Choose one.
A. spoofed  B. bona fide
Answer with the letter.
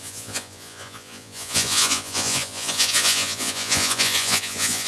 A